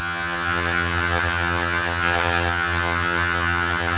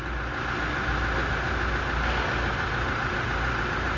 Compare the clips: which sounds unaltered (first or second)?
second